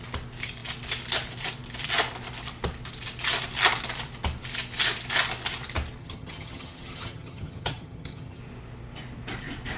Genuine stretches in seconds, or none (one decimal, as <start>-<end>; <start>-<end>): 0.0-6.0; 8.4-9.8